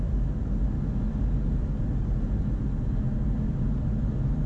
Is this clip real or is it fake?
real